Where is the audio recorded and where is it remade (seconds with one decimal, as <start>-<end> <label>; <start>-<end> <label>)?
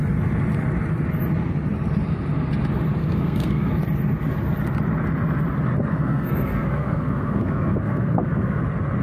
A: 0.0-3.0 recorded; 3.0-3.7 remade; 3.7-5.9 recorded; 5.9-8.6 remade; 8.6-9.0 recorded